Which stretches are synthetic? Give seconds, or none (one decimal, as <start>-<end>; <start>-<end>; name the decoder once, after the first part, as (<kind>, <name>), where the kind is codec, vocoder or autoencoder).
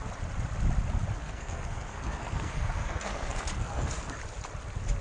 1.2-4.2 (codec, SNAC)